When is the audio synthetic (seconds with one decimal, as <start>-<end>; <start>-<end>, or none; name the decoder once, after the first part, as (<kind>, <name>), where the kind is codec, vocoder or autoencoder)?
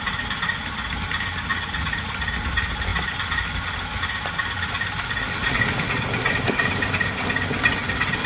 1.5-2.1 (vocoder, Vocos)